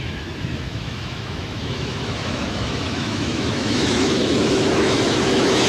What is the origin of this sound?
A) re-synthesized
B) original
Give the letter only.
A